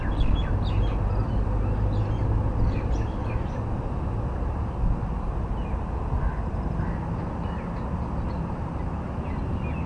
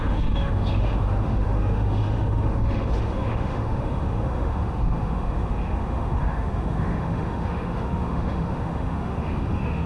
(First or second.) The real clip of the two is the first